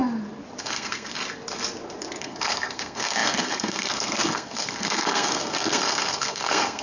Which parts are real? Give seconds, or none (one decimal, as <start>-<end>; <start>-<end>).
0.0-0.6; 1.2-2.2